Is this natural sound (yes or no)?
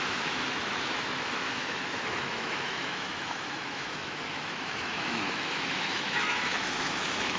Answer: no